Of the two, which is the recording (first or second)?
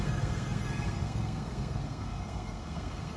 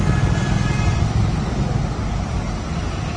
second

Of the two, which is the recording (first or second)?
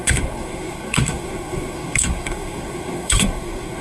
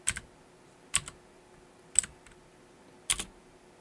second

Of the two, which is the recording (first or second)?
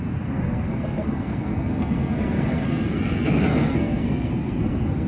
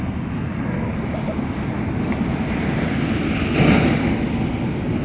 second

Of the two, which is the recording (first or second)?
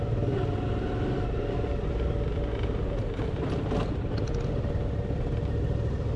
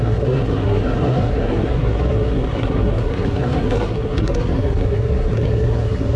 first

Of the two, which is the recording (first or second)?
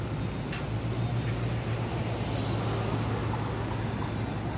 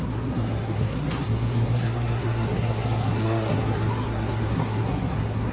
first